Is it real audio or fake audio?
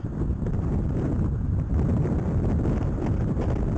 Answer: real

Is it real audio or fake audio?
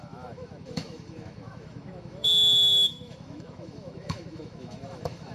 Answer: fake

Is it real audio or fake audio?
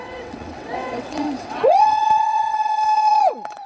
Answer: fake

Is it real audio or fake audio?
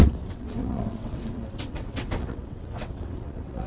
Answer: fake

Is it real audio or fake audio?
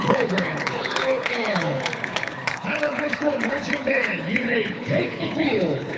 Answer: fake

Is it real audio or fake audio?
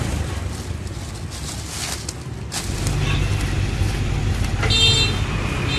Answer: real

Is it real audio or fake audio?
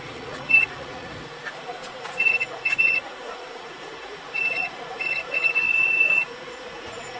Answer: fake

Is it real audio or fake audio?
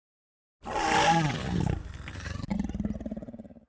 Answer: real